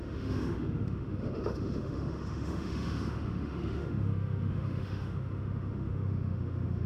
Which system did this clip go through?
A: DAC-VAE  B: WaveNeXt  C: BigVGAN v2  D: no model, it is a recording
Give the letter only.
A